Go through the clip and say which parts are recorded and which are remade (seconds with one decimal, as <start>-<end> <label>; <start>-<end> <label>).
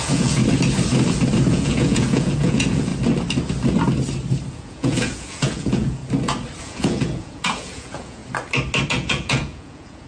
0.0-0.4 remade; 0.4-1.5 recorded; 1.5-2.9 remade; 2.9-4.5 recorded; 4.5-6.0 remade; 6.0-6.6 recorded; 6.6-8.2 remade; 8.2-8.9 recorded; 8.9-10.1 remade